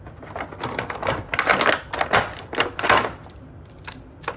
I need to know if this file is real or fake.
real